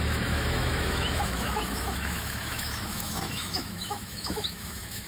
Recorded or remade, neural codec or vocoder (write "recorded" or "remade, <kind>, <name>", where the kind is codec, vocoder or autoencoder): remade, autoencoder, DAC-VAE